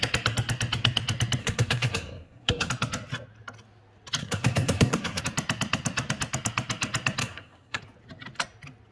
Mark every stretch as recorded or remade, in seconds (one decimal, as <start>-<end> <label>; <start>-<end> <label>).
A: 0.0-1.4 recorded; 1.4-2.7 remade; 2.7-4.2 recorded; 4.2-5.2 remade; 5.2-7.2 recorded; 7.2-7.8 remade; 7.8-8.9 recorded

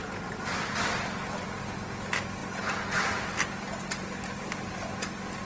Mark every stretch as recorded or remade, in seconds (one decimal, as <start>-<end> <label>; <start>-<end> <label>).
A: 0.0-5.4 recorded

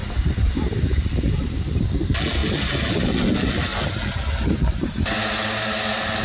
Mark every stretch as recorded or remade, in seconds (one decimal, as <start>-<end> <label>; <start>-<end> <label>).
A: 0.0-6.2 recorded

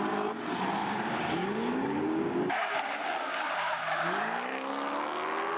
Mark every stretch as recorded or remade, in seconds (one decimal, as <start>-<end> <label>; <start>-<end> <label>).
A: 0.0-0.8 recorded; 0.8-4.2 remade; 4.2-5.6 recorded

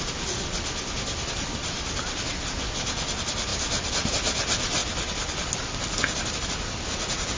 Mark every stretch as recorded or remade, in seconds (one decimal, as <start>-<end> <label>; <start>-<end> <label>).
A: 0.0-7.4 recorded

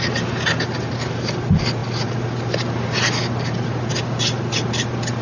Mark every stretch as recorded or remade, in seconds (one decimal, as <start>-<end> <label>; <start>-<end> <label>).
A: 0.0-5.2 recorded